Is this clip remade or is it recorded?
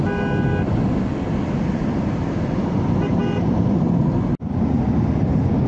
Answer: recorded